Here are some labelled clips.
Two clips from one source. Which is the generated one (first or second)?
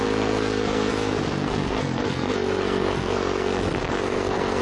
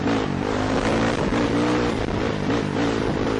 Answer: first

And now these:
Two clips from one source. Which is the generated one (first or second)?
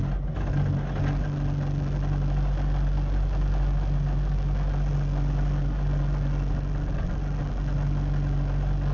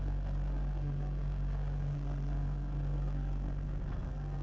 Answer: second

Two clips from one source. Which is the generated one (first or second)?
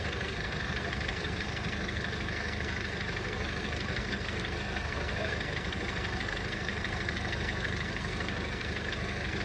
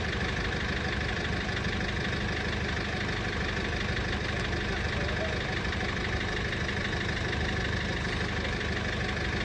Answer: first